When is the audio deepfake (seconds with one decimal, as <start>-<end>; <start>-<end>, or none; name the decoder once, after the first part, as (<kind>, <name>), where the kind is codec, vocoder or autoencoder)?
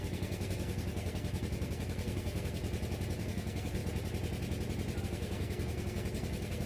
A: 0.0-2.6 (codec, SNAC); 3.2-3.8; 5.0-6.7